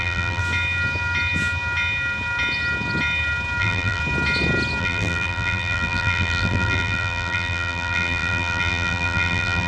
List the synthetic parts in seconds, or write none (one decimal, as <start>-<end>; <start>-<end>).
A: 0.0-0.4; 3.6-4.0; 4.8-9.7